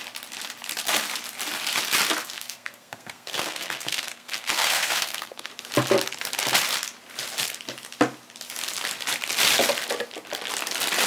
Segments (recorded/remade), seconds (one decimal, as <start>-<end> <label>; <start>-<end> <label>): 0.0-2.2 recorded; 2.2-5.5 remade; 5.5-11.1 recorded